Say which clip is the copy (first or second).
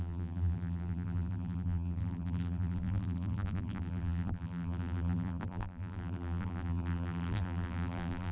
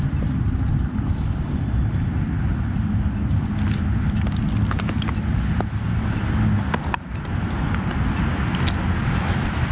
first